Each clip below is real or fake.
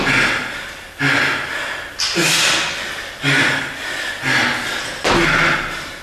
real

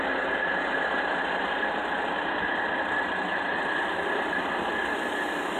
real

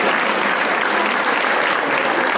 real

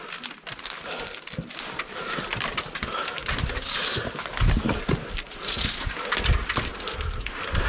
real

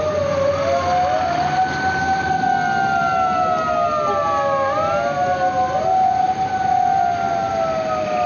real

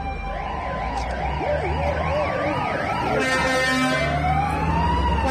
real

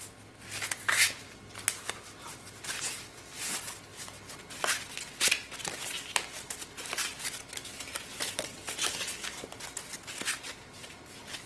real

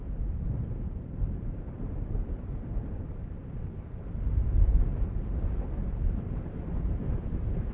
real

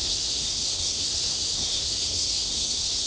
fake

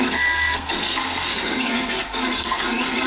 fake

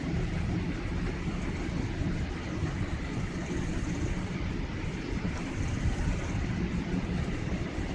real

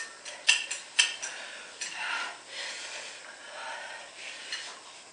real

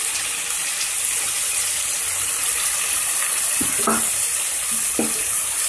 real